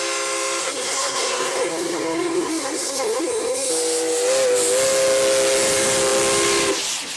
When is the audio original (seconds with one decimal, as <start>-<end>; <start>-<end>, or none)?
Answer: 0.0-0.6; 3.7-7.2